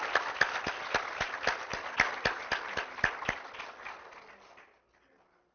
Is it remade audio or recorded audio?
recorded